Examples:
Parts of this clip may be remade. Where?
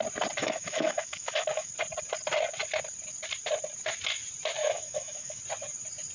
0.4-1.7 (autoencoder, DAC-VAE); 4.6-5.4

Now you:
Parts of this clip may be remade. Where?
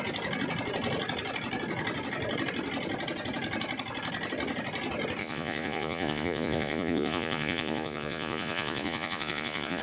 5.2-9.8 (vocoder, Vocos)